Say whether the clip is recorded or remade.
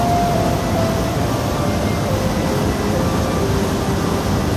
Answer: recorded